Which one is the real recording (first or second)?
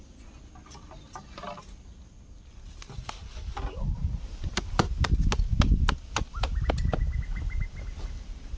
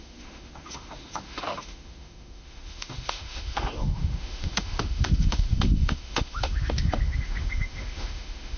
first